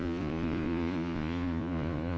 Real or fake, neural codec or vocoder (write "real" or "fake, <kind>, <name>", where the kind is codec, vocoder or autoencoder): fake, vocoder, Vocos